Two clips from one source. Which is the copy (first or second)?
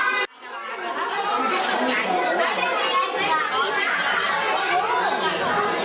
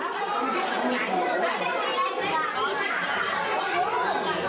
second